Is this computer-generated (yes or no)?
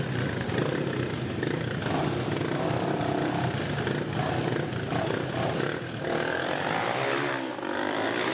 no